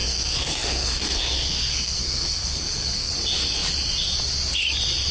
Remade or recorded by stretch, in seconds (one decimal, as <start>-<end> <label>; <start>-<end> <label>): 0.0-3.1 remade; 3.1-5.1 recorded